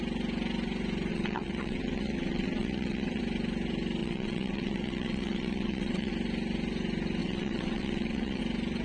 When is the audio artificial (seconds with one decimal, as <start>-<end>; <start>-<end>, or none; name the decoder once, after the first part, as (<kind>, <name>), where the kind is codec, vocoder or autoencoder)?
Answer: 1.1-3.2 (vocoder, WaveNeXt); 4.0-6.1; 7.2-8.4